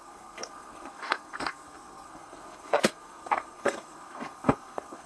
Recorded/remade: remade